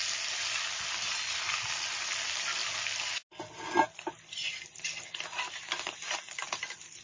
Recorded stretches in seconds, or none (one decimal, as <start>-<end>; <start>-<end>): 0.0-7.0